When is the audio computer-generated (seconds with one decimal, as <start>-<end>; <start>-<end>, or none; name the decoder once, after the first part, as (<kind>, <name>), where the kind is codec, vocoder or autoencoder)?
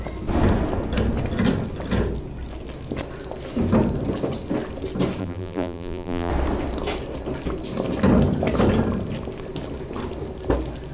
5.2-6.3 (vocoder, BigVGAN v2)